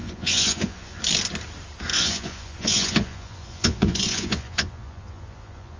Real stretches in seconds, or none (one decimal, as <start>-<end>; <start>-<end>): 1.0-1.9